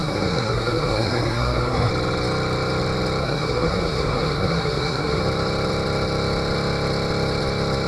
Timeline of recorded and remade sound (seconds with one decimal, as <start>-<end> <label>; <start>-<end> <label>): 0.0-1.9 remade; 1.9-3.2 recorded; 3.2-5.2 remade; 5.2-7.9 recorded